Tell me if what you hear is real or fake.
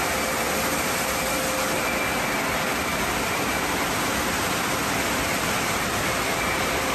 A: real